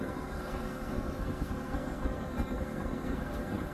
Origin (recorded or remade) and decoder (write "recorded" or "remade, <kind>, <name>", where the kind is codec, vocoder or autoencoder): remade, codec, SNAC